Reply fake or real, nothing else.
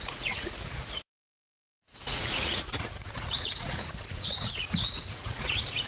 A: fake